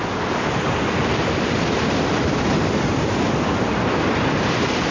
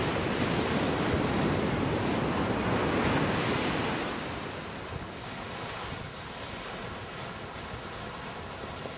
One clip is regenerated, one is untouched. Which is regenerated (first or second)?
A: first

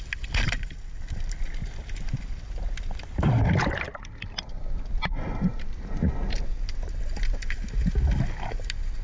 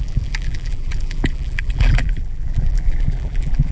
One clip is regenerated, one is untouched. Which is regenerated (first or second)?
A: second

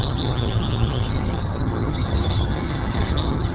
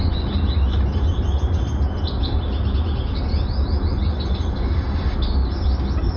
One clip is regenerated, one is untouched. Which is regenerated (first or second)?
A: first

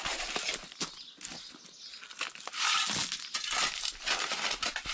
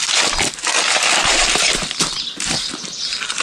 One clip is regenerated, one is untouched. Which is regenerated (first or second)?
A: second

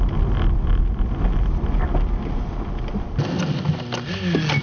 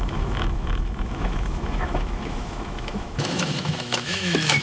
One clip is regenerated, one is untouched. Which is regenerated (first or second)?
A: second